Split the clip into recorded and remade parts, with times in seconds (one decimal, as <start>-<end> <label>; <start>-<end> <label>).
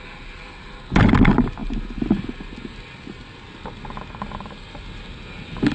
0.0-5.7 recorded